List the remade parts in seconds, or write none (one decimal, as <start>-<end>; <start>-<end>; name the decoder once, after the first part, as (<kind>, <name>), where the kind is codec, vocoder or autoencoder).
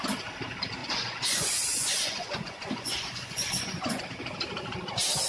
0.8-4.0 (vocoder, Vocos)